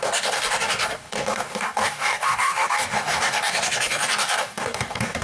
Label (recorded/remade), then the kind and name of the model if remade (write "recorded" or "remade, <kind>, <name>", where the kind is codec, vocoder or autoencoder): remade, codec, DAC